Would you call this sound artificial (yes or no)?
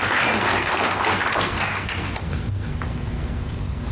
yes